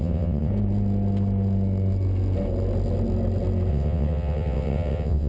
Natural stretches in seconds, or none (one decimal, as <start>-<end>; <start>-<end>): 0.5-3.7